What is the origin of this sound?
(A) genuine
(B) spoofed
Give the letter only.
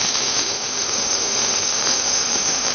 B